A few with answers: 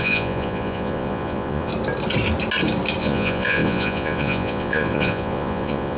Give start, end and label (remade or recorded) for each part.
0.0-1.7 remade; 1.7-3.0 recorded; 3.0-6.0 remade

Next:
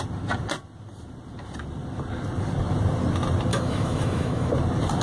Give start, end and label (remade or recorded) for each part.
0.0-3.5 recorded; 3.5-4.5 remade; 4.5-5.0 recorded

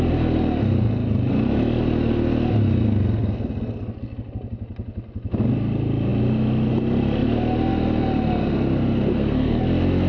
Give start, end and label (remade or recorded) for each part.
0.0-9.1 recorded; 9.1-9.6 remade; 9.6-10.1 recorded

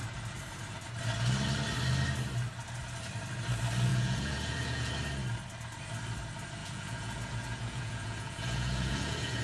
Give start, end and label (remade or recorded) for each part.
0.0-3.9 recorded; 3.9-4.9 remade; 4.9-6.6 recorded; 6.6-9.4 remade

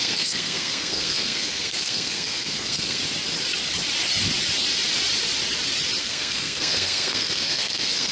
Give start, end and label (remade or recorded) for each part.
0.0-3.0 remade; 3.0-6.0 recorded; 6.0-8.1 remade

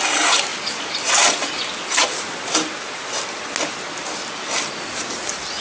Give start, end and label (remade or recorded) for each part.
0.0-5.6 recorded